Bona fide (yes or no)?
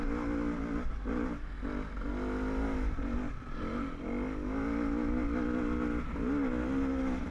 yes